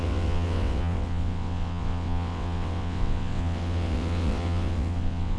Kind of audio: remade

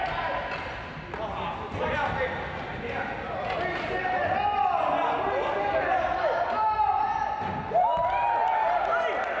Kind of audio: recorded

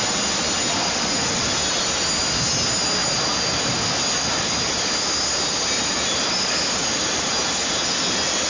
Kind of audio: recorded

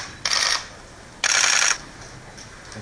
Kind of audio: recorded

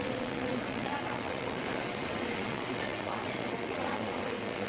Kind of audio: remade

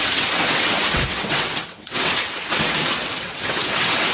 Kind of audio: remade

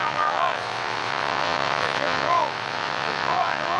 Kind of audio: remade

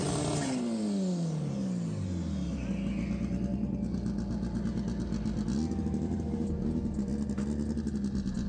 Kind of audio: recorded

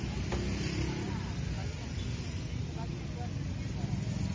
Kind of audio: recorded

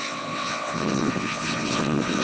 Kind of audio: remade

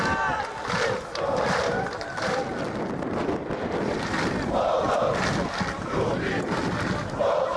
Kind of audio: recorded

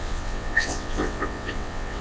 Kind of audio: remade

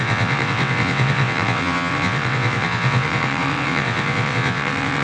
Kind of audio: remade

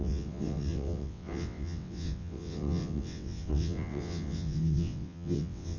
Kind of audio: remade